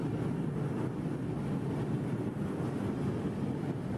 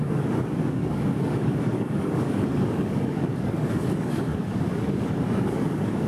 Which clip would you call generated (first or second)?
second